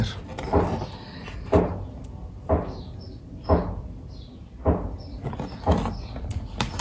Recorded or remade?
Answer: recorded